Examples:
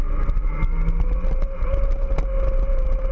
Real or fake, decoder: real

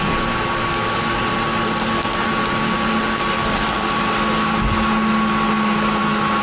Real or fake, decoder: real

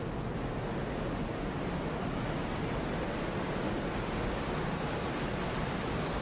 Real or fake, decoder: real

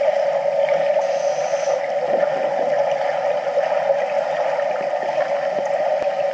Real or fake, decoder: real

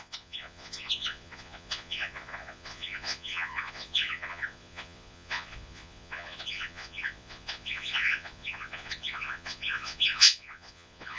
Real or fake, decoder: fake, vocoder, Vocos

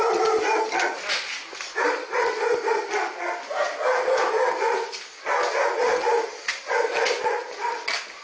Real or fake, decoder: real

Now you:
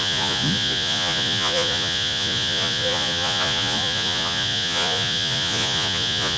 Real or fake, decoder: fake, vocoder, Vocos